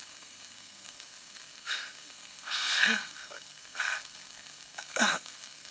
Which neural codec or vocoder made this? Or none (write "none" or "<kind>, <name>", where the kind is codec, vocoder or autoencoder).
codec, SNAC